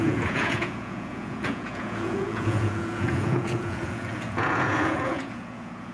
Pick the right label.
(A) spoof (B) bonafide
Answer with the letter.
A